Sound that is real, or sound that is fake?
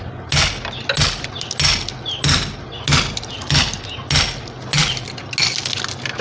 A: real